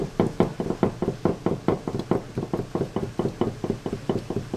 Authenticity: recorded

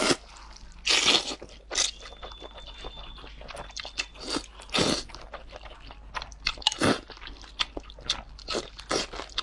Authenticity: recorded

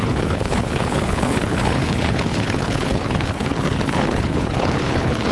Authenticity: remade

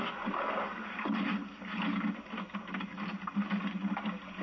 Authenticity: recorded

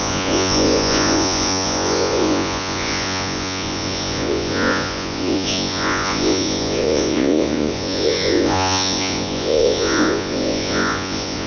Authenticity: remade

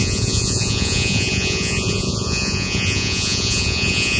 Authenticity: remade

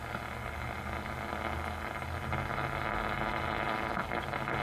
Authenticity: recorded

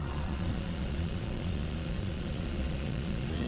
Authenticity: remade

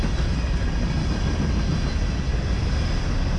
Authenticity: recorded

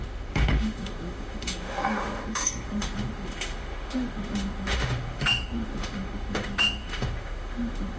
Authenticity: remade